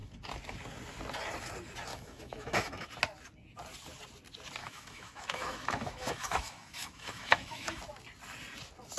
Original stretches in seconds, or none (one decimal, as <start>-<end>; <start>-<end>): 0.0-1.9; 2.9-4.6; 7.8-9.0